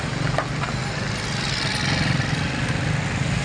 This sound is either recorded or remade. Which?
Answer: recorded